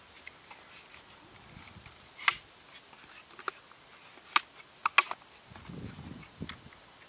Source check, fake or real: real